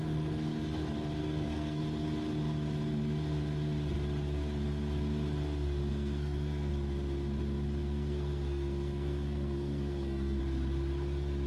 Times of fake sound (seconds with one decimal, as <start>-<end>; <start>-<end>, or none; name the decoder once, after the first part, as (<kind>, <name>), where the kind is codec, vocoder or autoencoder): 1.2-1.8 (codec, SNAC); 5.9-6.7; 7.8-10.4